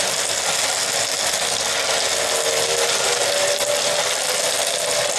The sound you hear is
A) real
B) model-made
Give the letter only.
B